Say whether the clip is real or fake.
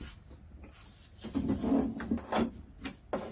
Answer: real